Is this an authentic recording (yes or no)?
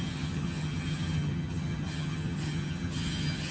no